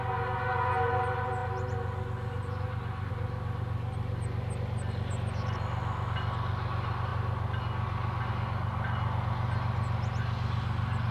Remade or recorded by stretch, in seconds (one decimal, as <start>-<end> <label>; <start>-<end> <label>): 0.0-11.1 recorded